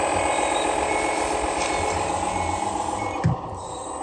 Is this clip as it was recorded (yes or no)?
yes